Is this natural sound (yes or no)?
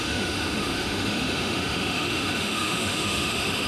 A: no